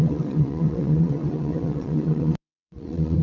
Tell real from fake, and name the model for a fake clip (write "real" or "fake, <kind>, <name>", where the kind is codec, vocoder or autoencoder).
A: fake, vocoder, WaveNeXt